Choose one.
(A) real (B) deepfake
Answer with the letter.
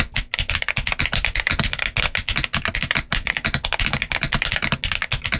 A